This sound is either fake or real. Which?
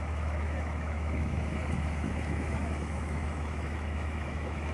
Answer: fake